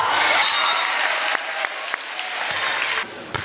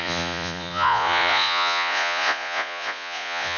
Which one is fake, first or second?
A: second